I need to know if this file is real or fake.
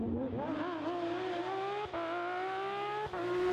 real